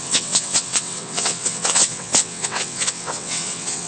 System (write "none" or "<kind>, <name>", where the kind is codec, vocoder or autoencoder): vocoder, WaveNeXt